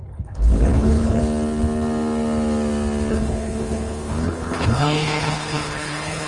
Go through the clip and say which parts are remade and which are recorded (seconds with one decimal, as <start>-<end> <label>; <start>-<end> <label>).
0.0-1.2 remade; 1.2-3.1 recorded; 3.1-6.3 remade